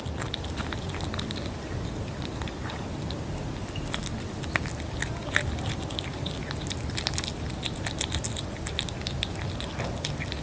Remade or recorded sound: recorded